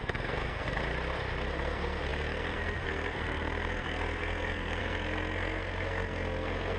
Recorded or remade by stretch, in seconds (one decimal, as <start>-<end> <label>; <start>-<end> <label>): 0.0-0.8 remade; 0.8-1.5 recorded; 1.5-6.8 remade